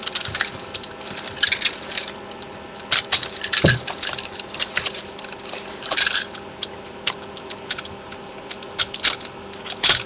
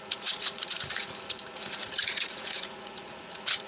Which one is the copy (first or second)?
second